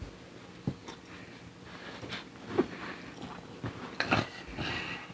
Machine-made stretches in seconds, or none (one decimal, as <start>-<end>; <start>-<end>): none